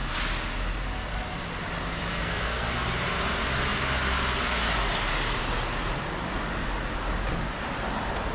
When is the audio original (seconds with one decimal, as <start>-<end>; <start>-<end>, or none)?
0.0-2.1; 2.7-8.3